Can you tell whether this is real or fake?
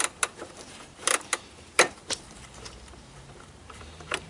fake